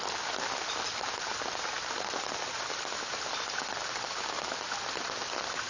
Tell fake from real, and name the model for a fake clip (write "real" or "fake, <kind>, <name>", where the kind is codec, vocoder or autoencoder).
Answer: real